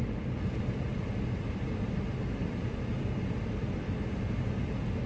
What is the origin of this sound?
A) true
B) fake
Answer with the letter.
A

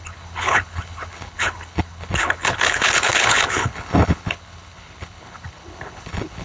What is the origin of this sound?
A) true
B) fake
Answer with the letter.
B